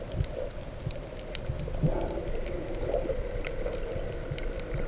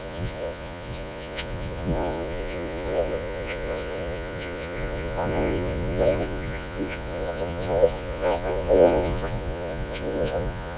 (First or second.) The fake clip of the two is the second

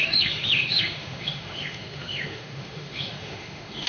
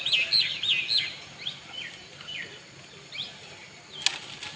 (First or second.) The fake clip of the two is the first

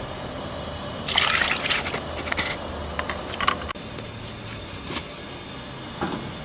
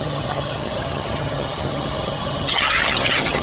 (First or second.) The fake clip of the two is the second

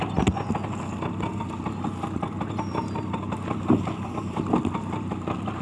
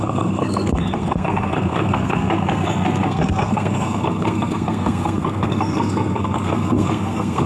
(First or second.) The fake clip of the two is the second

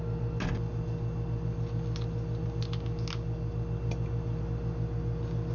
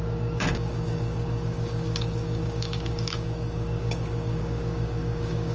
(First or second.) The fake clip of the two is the second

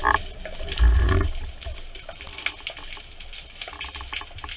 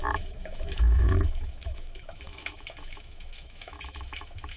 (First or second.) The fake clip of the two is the second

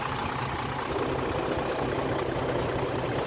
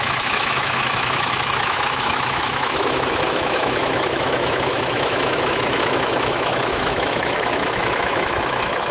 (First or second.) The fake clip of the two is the second